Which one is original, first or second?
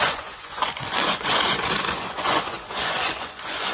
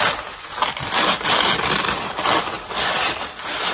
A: second